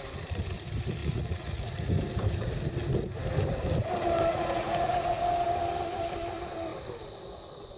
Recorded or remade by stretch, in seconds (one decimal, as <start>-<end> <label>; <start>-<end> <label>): 0.0-1.0 recorded; 1.0-1.7 remade; 1.7-4.3 recorded; 4.3-5.2 remade; 5.2-7.8 recorded

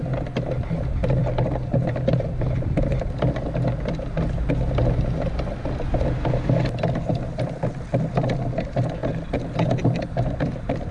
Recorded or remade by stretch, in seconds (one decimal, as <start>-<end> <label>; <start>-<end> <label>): 0.0-7.1 recorded; 7.1-7.6 remade; 7.6-10.9 recorded